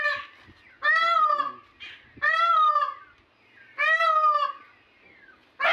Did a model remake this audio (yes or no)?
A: no